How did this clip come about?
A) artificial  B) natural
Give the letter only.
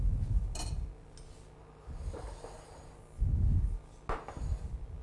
B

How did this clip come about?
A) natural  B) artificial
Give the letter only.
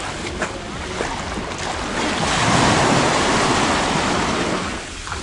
A